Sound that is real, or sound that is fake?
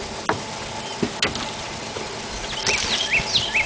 real